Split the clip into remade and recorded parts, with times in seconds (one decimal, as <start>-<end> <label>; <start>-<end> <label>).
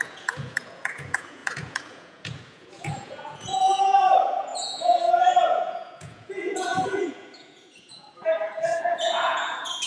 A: 0.0-9.9 remade